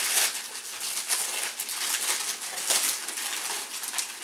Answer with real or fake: real